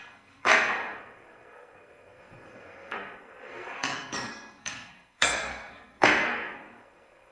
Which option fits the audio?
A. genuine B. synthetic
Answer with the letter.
B